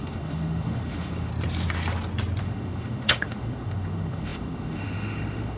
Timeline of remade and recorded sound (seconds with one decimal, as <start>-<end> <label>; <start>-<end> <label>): 0.0-1.3 remade; 1.3-2.4 recorded; 2.4-5.6 remade